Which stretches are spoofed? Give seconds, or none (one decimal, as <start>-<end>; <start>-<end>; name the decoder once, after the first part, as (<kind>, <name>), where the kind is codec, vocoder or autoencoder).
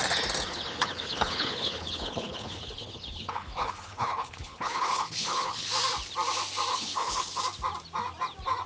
0.5-5.7 (codec, HILCodec); 6.7-7.4